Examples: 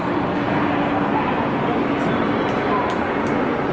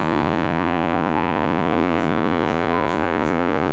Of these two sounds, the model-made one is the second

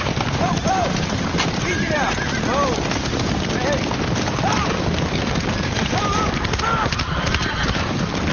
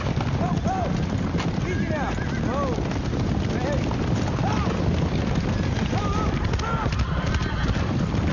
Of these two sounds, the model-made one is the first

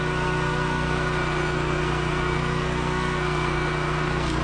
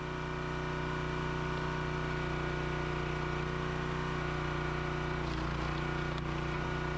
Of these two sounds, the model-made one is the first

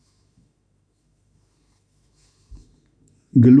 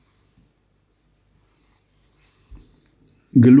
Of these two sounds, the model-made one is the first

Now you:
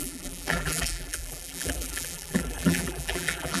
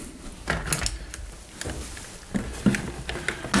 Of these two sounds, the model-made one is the first